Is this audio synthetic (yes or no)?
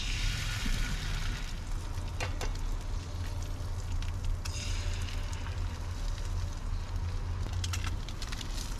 no